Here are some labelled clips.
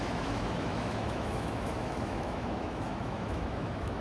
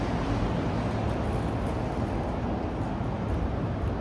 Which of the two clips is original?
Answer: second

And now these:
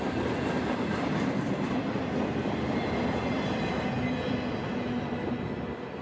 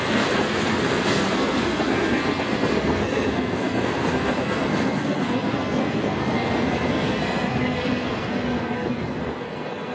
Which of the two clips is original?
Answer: first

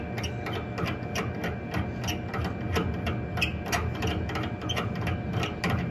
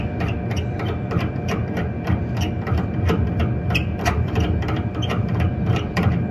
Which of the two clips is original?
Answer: first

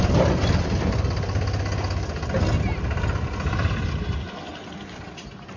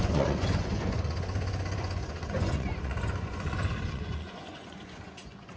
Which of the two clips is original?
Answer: first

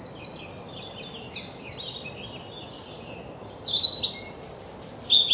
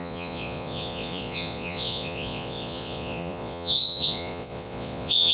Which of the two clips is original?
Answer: first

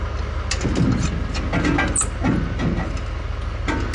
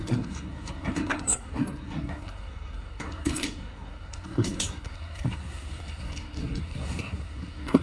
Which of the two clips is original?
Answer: first